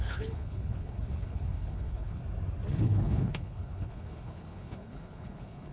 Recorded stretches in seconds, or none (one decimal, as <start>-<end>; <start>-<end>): 2.2-2.7

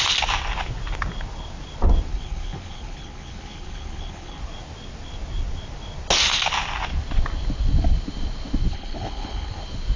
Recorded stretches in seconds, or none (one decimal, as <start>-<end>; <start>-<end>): 0.0-2.1; 4.4-8.7; 9.6-10.0